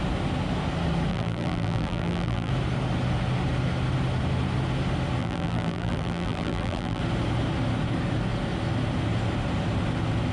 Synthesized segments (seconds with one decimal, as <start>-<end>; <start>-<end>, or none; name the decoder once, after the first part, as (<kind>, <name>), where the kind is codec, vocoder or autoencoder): 1.1-2.5 (vocoder, BigVGAN v2); 5.2-7.0